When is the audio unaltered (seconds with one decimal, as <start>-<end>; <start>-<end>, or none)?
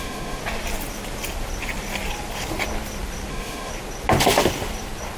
0.4-3.3; 3.7-5.2